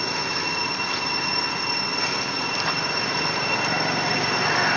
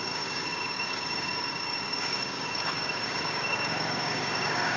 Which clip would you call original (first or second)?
first